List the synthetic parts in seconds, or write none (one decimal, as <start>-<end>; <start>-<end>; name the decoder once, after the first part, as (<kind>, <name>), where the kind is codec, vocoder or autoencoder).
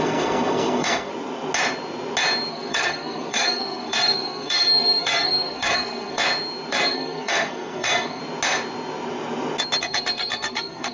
0.0-1.1 (codec, SNAC); 2.5-6.2; 6.7-8.2; 9.8-10.9